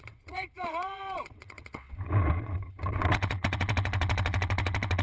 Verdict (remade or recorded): remade